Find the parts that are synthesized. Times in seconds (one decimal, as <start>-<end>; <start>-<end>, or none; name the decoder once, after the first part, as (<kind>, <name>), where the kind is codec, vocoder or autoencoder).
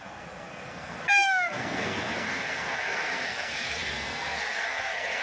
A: 0.0-5.2 (codec, SNAC)